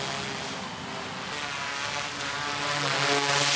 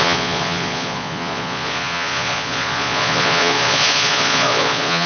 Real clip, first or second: first